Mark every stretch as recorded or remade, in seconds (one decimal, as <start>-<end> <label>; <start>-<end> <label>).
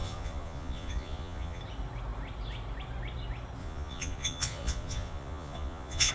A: 0.0-1.6 remade; 1.6-3.6 recorded; 3.6-6.1 remade